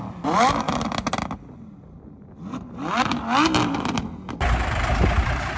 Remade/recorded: recorded